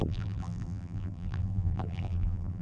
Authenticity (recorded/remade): remade